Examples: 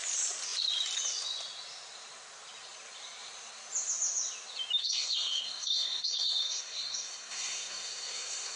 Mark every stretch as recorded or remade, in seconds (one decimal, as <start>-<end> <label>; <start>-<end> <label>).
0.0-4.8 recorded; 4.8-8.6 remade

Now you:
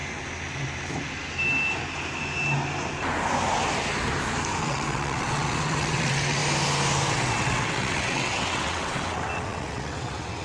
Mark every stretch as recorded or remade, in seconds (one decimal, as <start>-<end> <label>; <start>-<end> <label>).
0.0-4.6 recorded; 4.6-6.4 remade; 6.4-7.1 recorded; 7.1-10.4 remade

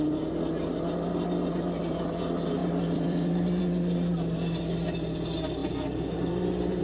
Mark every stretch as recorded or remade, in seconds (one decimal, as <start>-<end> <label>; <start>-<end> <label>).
0.0-2.6 recorded; 2.6-3.6 remade; 3.6-6.8 recorded

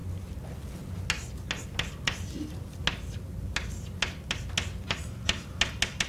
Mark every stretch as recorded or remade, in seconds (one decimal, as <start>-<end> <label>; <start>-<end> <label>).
0.0-6.1 recorded